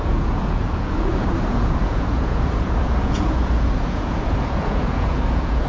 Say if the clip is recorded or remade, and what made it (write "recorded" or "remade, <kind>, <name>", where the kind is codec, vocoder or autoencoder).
remade, vocoder, Vocos